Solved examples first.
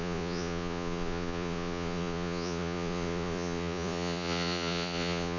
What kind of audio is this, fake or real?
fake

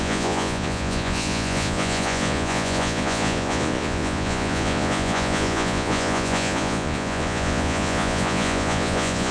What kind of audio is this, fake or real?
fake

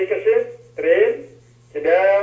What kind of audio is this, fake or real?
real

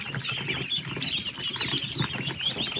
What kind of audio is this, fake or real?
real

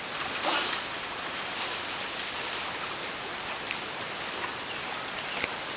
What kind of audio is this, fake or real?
real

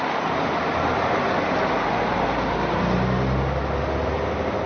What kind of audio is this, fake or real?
real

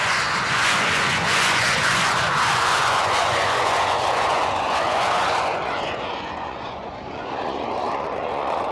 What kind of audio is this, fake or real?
fake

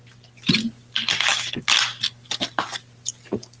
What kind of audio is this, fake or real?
real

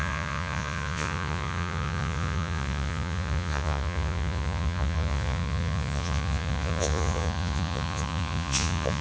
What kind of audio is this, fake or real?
fake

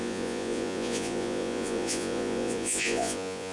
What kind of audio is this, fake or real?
fake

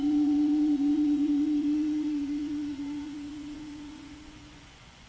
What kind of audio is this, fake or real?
fake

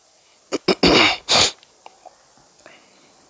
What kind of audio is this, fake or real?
real